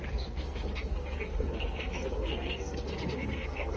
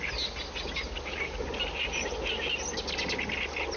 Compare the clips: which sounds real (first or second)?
second